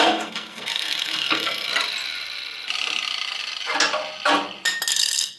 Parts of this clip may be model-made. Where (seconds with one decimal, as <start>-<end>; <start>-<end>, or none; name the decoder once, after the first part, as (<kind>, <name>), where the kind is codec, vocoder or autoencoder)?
0.0-1.7 (codec, SNAC); 4.9-5.4